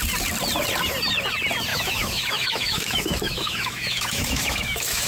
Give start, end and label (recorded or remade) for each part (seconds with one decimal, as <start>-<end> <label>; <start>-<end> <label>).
0.0-1.7 recorded; 1.7-5.1 remade